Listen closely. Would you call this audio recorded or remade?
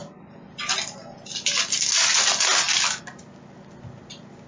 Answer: recorded